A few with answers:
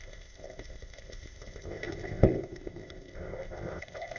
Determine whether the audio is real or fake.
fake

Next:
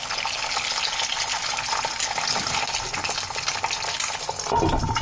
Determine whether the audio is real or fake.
real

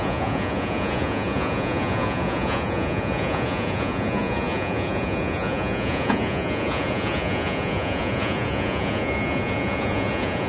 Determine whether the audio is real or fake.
fake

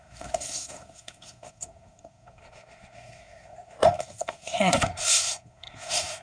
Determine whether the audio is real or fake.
fake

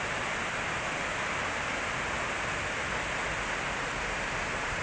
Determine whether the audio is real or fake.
real